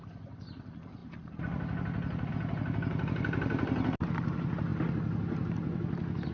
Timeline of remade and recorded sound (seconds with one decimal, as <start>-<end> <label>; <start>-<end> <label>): 0.0-6.3 recorded